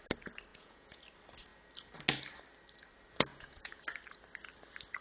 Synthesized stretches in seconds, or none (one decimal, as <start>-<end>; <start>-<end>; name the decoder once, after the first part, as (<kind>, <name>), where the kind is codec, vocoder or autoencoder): 0.5-1.0 (vocoder, Vocos); 3.3-3.8